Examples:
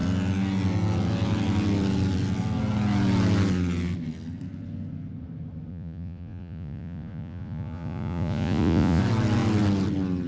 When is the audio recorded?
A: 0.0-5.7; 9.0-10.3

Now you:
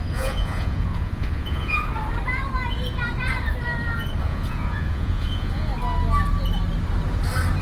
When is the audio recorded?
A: 1.9-4.2; 5.7-7.6

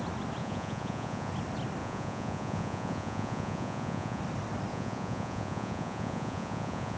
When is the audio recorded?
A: 0.0-0.4; 1.3-1.8; 4.2-4.7

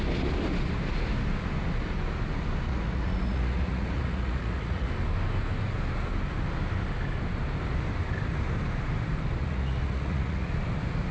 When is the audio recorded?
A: 0.0-2.7; 4.9-9.4; 10.5-11.1

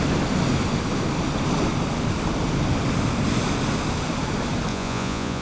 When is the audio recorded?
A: 0.0-4.7

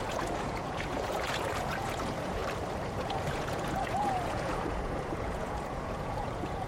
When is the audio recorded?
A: 2.4-2.9

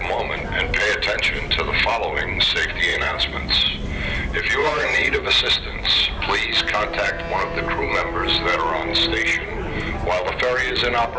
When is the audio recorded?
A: 0.0-2.9; 3.7-4.6; 5.4-11.2

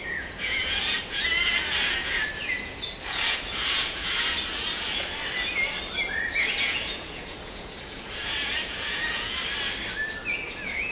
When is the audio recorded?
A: 5.2-6.6; 9.4-10.3